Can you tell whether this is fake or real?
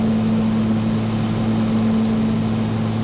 real